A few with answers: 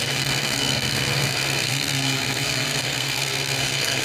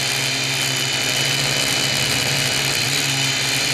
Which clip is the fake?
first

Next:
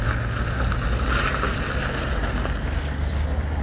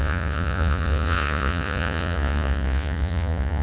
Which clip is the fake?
second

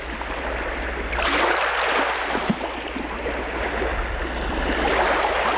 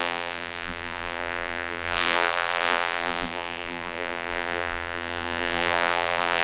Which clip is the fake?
second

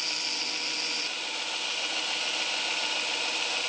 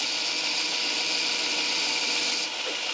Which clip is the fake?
second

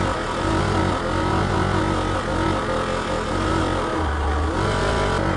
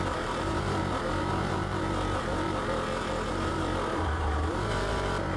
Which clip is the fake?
second